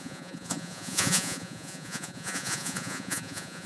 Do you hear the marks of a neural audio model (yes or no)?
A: yes